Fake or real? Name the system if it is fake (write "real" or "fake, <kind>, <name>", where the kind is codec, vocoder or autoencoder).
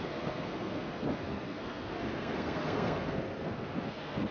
fake, codec, SNAC